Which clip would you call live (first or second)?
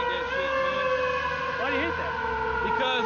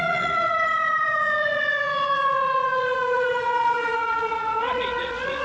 first